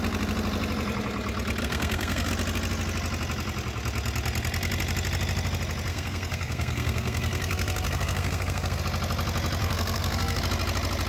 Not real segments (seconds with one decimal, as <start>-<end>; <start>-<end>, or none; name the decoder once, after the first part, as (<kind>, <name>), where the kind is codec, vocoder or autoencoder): 1.6-2.3 (codec, SNAC); 5.9-8.8; 9.6-10.4